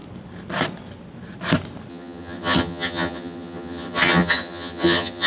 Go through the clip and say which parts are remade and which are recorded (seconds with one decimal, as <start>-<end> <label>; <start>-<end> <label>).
0.0-1.9 recorded; 1.9-5.3 remade

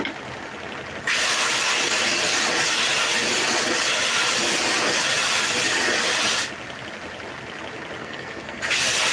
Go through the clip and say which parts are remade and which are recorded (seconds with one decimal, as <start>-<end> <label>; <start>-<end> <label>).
0.0-8.0 recorded; 8.0-8.6 remade; 8.6-9.1 recorded

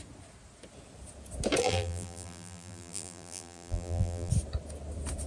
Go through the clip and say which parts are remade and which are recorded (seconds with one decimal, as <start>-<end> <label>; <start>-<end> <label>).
0.0-1.6 recorded; 1.6-4.3 remade; 4.3-5.3 recorded

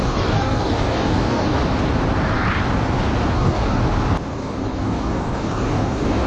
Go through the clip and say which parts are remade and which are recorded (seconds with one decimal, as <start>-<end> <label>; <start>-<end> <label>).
0.0-1.6 remade; 1.6-3.3 recorded; 3.3-3.8 remade; 3.8-4.3 recorded; 4.3-6.3 remade

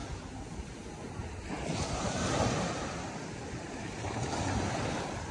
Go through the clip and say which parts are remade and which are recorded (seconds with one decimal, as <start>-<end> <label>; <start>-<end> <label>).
0.0-5.3 recorded

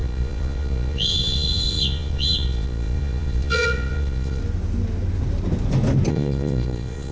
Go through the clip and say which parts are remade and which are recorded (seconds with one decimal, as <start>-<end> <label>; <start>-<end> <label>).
0.0-4.4 remade; 4.4-6.1 recorded; 6.1-7.1 remade